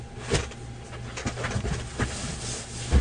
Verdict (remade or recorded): recorded